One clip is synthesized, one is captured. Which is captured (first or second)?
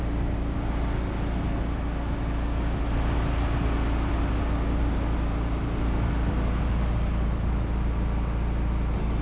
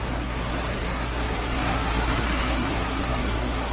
first